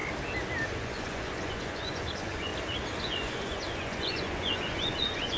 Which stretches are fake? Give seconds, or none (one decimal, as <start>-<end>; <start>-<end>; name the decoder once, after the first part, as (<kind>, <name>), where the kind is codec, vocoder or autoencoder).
0.7-2.5 (vocoder, Vocos); 3.0-5.4